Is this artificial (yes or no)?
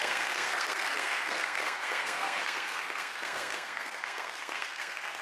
yes